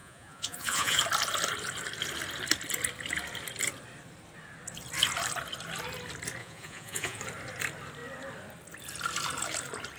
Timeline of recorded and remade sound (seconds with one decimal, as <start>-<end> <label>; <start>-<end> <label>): 0.0-1.0 remade; 1.0-6.4 recorded; 6.4-7.2 remade; 7.2-10.0 recorded